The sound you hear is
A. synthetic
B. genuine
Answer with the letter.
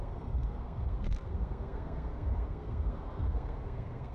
A